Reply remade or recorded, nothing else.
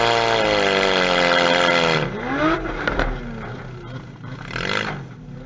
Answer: recorded